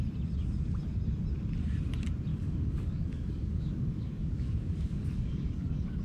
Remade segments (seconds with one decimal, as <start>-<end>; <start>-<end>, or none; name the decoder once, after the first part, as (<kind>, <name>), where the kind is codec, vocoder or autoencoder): 2.3-6.0 (codec, DAC)